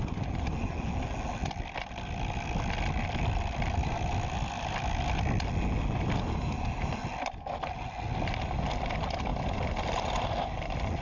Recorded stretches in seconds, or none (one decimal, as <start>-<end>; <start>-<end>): 0.0-11.0